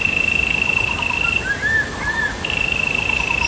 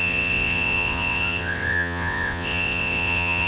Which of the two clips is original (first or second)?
first